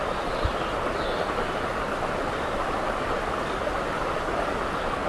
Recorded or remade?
recorded